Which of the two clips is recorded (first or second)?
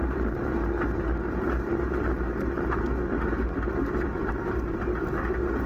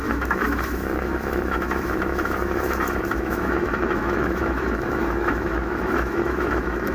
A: first